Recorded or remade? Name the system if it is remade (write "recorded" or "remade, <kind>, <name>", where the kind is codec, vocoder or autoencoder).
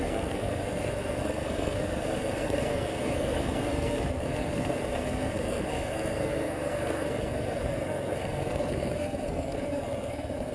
remade, codec, SNAC